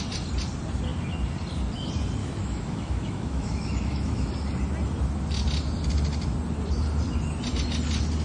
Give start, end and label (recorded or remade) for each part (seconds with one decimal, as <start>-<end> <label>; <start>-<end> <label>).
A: 0.0-2.2 recorded; 2.2-4.3 remade; 4.3-8.2 recorded